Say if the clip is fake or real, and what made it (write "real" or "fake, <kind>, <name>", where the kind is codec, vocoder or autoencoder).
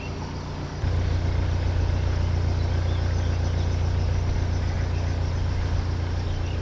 real